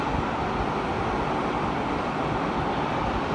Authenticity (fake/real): real